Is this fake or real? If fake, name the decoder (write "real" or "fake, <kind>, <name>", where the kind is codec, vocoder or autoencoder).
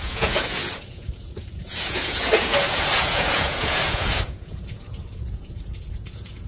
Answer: fake, vocoder, Vocos